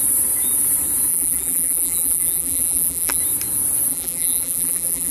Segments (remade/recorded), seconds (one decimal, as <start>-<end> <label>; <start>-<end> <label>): 0.0-1.1 recorded; 1.1-3.2 remade; 3.2-3.9 recorded; 3.9-5.1 remade